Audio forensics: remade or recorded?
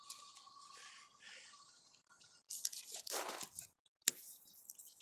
recorded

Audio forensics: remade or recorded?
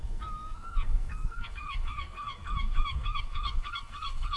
remade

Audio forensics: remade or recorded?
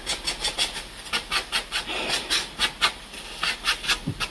recorded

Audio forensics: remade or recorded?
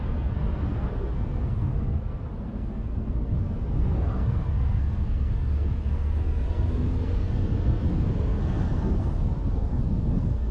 remade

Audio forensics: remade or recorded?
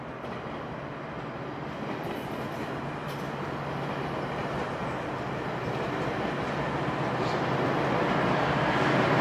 recorded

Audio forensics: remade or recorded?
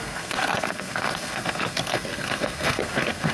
remade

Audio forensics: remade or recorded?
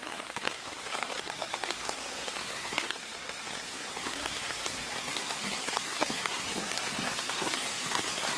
remade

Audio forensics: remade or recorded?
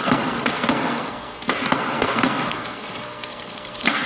remade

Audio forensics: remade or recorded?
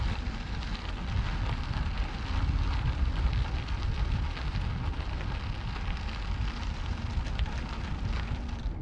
recorded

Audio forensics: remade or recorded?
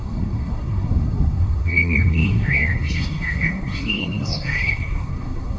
remade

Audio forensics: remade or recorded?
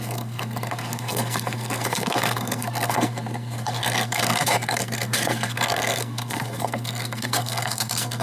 remade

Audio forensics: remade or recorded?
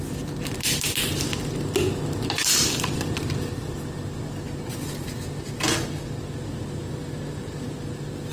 recorded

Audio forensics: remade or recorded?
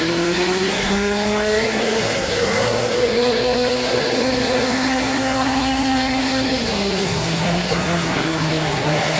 remade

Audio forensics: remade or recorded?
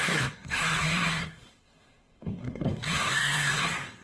remade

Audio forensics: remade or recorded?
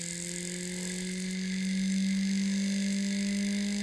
recorded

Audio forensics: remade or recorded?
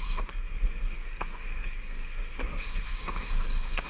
remade